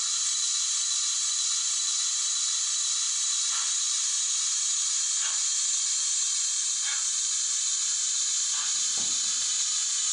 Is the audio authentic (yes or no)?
yes